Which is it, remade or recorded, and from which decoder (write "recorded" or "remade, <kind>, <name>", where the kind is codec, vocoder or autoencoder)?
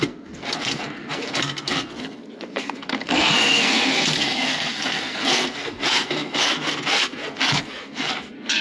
remade, codec, SNAC